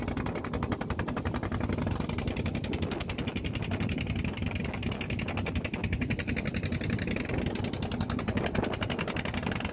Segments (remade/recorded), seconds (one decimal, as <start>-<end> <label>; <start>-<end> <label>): 0.0-9.7 recorded